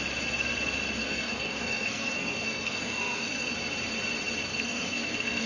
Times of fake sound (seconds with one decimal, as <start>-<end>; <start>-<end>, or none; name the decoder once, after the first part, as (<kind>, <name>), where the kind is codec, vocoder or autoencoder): 1.0-3.5 (codec, SNAC); 4.5-5.5